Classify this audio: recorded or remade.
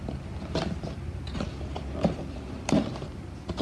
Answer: remade